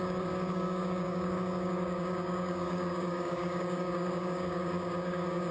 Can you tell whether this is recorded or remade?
remade